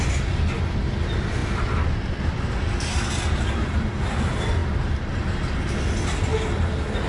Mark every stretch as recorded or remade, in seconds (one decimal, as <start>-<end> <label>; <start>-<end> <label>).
0.0-4.6 recorded; 4.6-5.1 remade; 5.1-7.1 recorded